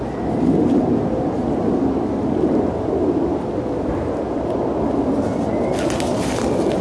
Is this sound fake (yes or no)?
no